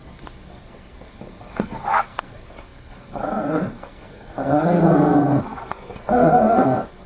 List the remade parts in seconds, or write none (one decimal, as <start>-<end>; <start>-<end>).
0.0-7.1